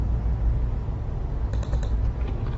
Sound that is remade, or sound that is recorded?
recorded